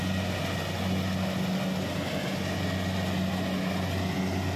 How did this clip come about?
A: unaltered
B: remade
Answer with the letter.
A